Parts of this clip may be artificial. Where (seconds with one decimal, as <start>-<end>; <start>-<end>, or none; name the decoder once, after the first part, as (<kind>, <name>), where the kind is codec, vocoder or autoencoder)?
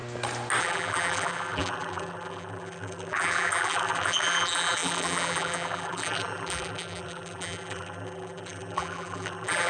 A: 0.6-9.7 (vocoder, BigVGAN v2)